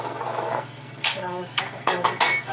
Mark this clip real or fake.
fake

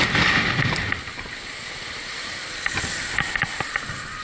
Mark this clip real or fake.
real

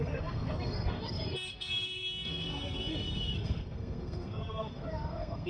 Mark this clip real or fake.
fake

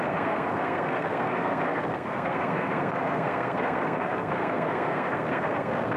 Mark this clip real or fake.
fake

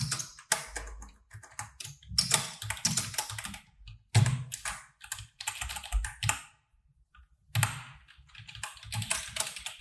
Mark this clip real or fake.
real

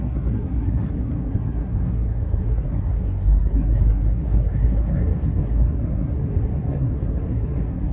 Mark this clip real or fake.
fake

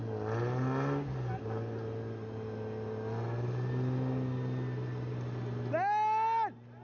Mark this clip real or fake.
real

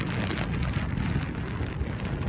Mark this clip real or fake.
real